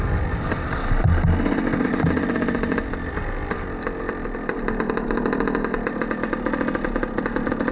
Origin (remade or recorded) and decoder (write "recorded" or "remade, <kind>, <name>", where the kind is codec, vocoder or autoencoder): recorded